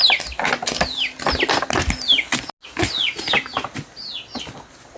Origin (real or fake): real